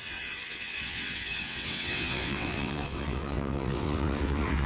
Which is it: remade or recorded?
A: remade